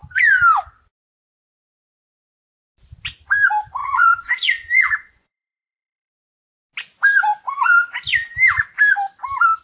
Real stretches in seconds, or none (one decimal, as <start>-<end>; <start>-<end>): 0.0-3.8; 6.1-9.6